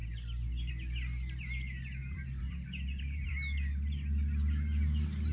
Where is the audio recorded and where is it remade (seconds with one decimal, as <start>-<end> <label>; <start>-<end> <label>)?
0.0-2.0 recorded; 2.0-3.3 remade; 3.3-5.3 recorded